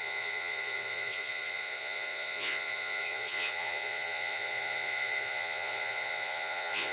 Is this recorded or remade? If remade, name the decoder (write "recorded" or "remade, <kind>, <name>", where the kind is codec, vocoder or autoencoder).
remade, vocoder, Vocos